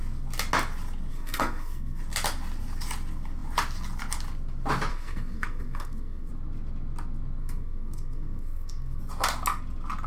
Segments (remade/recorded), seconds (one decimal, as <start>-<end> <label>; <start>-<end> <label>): 0.0-1.1 recorded; 1.1-2.0 remade; 2.0-4.9 recorded; 4.9-6.3 remade; 6.3-7.4 recorded; 7.4-9.0 remade; 9.0-10.1 recorded